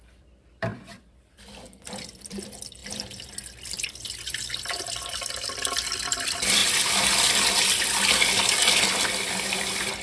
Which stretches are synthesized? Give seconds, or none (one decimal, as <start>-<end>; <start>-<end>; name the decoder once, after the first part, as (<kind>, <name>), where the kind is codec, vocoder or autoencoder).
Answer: 0.0-6.6 (vocoder, BigVGAN v2); 9.3-10.0